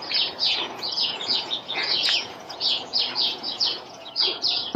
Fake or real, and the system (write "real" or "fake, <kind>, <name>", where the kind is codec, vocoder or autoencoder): fake, vocoder, Vocos